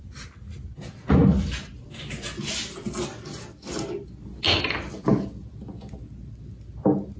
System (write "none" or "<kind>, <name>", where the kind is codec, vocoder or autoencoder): none